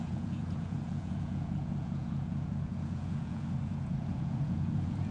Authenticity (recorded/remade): remade